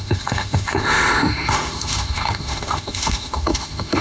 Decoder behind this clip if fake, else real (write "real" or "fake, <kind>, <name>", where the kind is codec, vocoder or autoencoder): fake, autoencoder, DAC-VAE